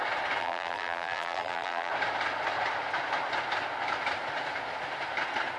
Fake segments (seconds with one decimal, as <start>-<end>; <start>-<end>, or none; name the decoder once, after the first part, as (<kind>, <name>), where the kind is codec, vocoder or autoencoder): 0.4-1.9 (vocoder, BigVGAN v2)